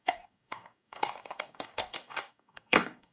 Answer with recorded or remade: remade